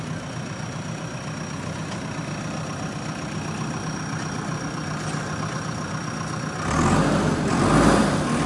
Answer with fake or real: real